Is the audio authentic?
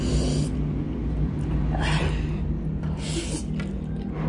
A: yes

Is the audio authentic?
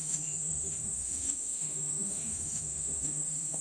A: no